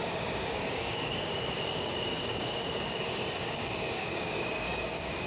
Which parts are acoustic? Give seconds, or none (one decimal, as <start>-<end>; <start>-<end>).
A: none